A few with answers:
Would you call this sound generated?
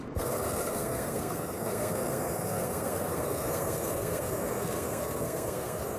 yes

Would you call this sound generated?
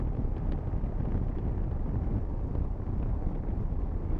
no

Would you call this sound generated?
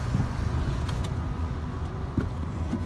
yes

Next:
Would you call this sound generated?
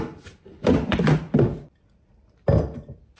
yes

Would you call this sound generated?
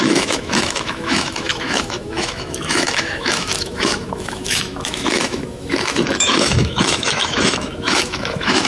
yes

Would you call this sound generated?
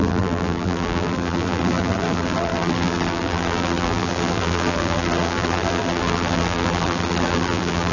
yes